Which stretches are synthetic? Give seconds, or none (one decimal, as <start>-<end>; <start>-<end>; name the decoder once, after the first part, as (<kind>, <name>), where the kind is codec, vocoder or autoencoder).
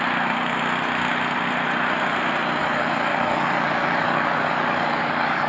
2.6-5.5 (codec, DAC)